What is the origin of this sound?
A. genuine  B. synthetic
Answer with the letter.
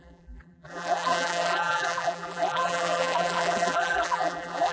B